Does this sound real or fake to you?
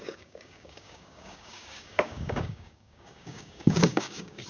fake